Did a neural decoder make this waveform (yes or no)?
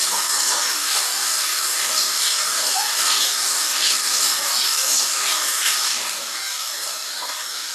yes